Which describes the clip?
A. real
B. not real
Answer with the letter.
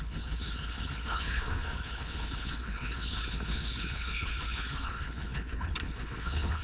B